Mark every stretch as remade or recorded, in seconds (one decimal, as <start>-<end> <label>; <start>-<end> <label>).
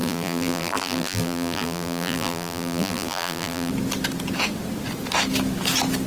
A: 0.0-3.7 remade; 3.7-6.1 recorded